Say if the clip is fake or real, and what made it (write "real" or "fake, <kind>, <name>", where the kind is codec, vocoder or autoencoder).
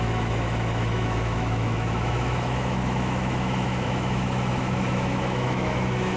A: fake, autoencoder, DAC-VAE